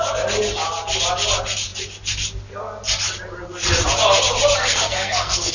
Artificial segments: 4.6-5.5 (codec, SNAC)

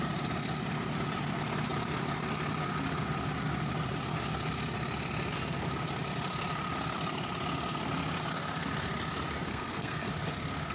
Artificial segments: 9.5-10.1 (codec, SNAC)

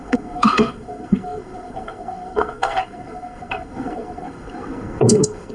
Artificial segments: 0.0-5.5 (codec, SNAC)